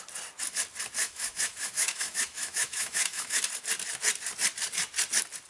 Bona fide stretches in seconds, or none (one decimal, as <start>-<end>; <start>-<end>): 0.0-1.0; 3.4-5.5